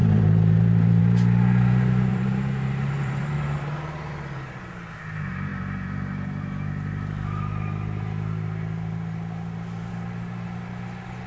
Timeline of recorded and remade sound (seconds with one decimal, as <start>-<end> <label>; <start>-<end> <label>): 0.0-1.0 remade; 1.0-2.1 recorded; 2.1-3.4 remade; 3.4-11.3 recorded

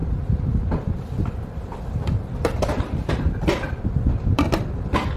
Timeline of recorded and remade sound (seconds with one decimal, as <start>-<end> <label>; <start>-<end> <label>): 0.0-3.1 remade; 3.1-3.5 recorded; 3.5-4.6 remade; 4.6-5.2 recorded

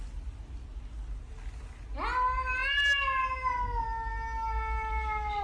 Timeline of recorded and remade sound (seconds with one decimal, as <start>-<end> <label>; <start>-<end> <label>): 0.0-5.4 recorded

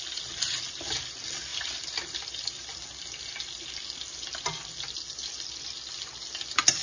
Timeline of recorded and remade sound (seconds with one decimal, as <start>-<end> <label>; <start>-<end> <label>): 0.0-6.8 recorded

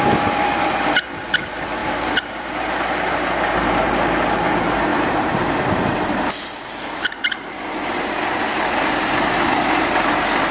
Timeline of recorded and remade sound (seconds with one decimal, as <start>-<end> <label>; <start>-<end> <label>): 0.0-1.8 recorded; 1.8-2.5 remade; 2.5-4.9 recorded; 4.9-9.9 remade; 9.9-10.5 recorded

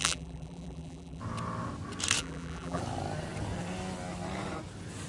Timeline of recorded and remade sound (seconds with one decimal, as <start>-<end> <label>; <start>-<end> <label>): 0.0-1.2 remade; 1.2-2.2 recorded; 2.2-2.8 remade; 2.8-5.1 recorded

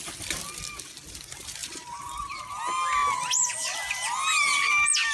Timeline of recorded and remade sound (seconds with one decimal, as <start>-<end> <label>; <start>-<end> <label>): 0.0-1.6 recorded; 1.6-2.4 remade; 2.4-5.1 recorded